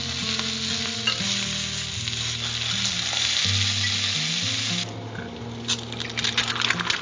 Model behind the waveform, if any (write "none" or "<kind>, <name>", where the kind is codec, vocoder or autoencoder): none